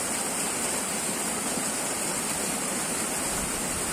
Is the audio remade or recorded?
recorded